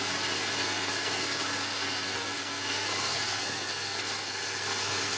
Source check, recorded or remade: remade